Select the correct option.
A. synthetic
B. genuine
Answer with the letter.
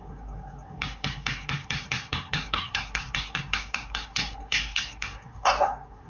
A